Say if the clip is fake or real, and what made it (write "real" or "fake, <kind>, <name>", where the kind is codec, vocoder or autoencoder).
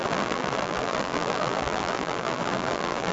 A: fake, vocoder, BigVGAN v2